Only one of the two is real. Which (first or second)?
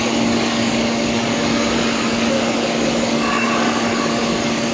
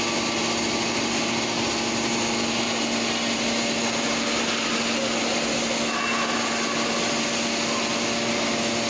second